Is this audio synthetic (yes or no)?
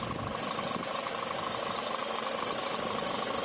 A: yes